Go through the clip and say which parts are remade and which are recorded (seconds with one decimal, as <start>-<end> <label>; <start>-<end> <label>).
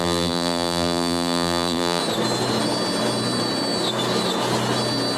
0.0-2.0 remade; 2.0-5.2 recorded